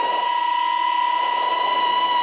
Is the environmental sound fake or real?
real